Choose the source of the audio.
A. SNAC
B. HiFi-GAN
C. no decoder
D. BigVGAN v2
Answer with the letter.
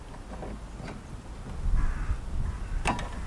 C